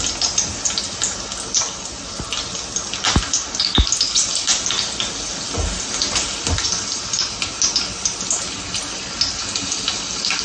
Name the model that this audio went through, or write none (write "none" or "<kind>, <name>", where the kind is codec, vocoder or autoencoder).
none